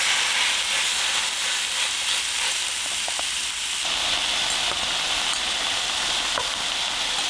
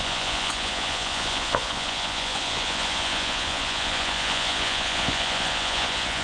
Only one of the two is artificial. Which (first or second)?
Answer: second